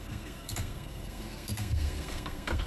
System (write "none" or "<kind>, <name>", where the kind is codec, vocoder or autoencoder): codec, SNAC